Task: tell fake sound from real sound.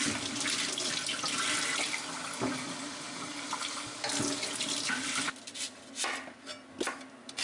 real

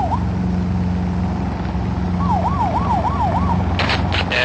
real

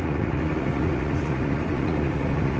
fake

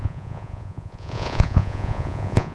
fake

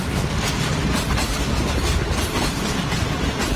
real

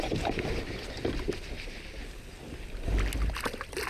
real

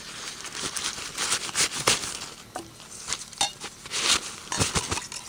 real